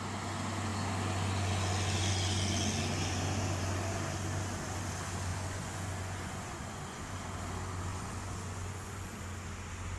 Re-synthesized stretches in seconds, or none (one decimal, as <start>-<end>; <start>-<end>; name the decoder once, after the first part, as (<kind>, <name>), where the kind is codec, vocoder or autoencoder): 5.3-7.0 (vocoder, Vocos); 7.9-9.2